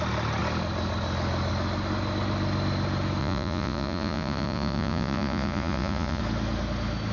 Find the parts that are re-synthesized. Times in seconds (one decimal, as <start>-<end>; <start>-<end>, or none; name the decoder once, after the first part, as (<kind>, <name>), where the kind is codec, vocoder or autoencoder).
3.2-6.2 (vocoder, Vocos)